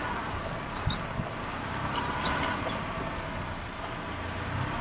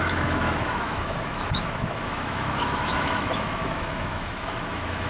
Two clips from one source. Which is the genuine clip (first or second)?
first